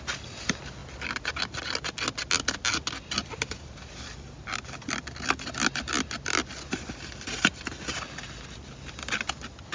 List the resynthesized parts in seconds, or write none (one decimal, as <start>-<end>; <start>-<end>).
none